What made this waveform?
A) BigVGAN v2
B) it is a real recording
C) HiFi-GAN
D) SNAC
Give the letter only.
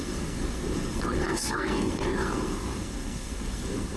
D